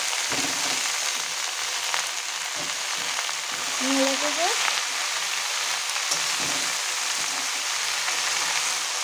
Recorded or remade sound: recorded